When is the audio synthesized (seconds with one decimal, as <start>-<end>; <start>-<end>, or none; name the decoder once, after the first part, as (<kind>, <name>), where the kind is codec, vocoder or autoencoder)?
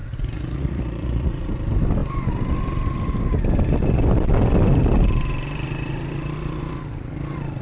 0.0-1.5 (vocoder, Vocos)